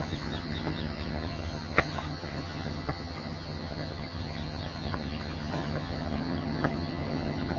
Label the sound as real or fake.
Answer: fake